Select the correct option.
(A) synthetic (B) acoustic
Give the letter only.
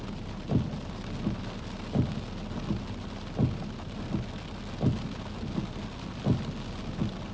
B